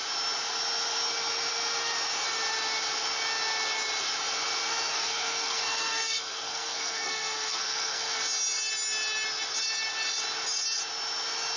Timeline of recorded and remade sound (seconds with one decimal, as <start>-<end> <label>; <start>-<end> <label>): 0.0-4.9 recorded; 4.9-8.2 remade; 8.2-11.6 recorded